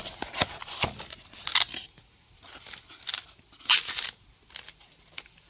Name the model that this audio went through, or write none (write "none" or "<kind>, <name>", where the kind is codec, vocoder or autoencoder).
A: none